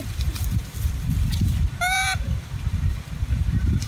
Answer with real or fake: fake